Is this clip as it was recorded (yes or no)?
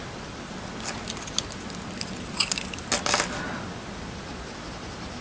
yes